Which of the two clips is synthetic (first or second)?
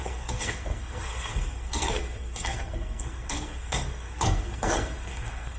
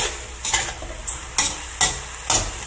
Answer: first